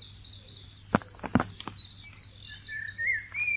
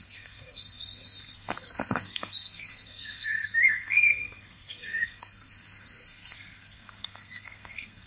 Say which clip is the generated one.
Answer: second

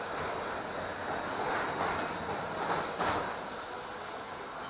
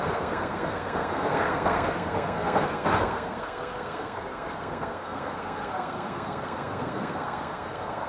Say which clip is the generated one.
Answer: second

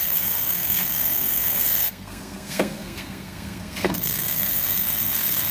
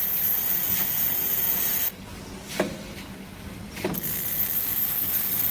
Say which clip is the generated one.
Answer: first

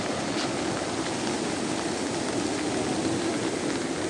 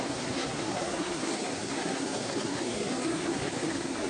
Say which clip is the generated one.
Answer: second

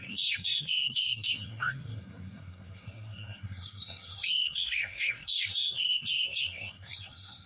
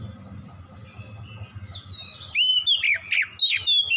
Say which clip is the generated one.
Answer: first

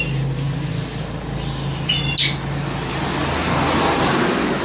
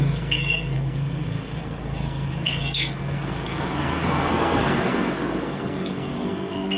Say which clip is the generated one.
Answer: second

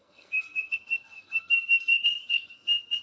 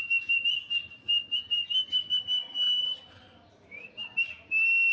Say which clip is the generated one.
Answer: first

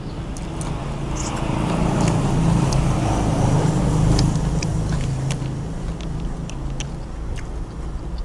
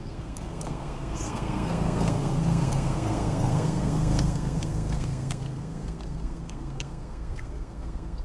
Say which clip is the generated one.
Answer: second